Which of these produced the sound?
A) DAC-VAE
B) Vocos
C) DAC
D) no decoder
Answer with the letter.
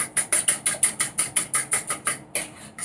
D